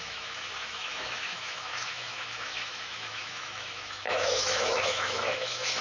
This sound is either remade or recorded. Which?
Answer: remade